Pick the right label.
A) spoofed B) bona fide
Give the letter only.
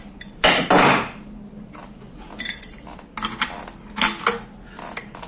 B